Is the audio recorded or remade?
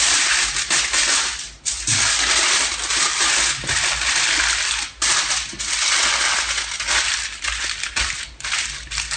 recorded